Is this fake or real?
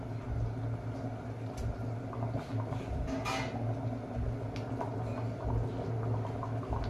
real